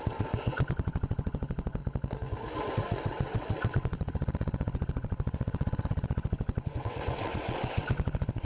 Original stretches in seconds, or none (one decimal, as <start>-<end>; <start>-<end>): 1.8-2.7